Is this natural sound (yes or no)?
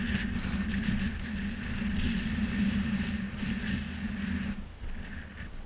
yes